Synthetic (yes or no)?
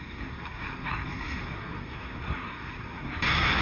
yes